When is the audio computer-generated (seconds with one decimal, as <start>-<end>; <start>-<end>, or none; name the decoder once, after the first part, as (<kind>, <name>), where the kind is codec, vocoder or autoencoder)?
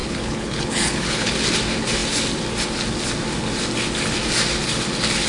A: 0.0-1.3 (codec, HILCodec)